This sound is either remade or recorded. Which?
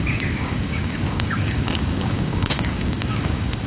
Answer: remade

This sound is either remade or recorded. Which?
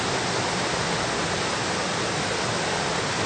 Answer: recorded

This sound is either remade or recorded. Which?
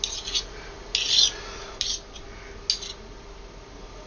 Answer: recorded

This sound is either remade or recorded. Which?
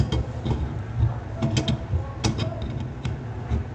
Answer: recorded